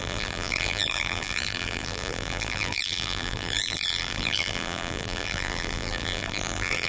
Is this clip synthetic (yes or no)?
yes